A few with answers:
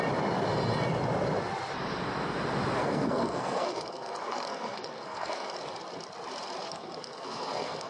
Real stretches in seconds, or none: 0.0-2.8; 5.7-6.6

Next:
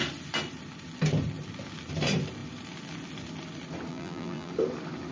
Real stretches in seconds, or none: 0.0-3.9; 4.5-5.1

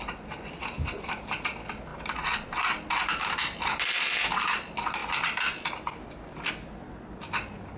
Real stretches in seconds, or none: 0.0-7.8

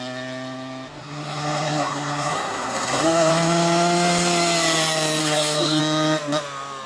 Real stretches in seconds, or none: 0.0-1.0; 3.3-5.2; 5.8-6.9

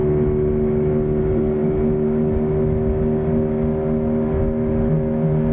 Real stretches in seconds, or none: 0.0-5.5

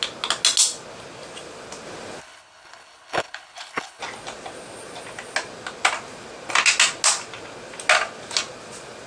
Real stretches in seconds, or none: 0.0-2.2; 4.0-9.1